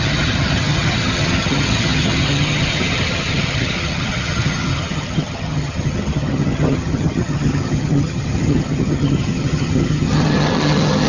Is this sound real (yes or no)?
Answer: no